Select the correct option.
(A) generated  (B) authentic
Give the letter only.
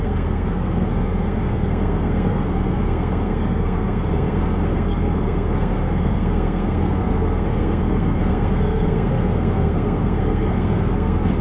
A